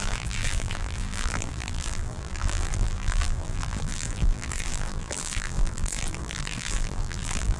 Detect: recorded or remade remade